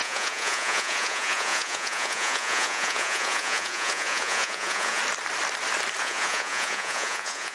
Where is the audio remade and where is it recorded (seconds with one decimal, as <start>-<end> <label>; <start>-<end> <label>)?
0.0-5.0 remade; 5.0-6.0 recorded; 6.0-7.5 remade